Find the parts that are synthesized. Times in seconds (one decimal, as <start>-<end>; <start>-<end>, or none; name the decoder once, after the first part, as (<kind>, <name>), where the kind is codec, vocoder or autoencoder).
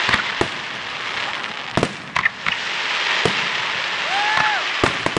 none